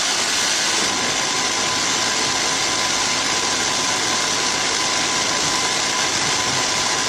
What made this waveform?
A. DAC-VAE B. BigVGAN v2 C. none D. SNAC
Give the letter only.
C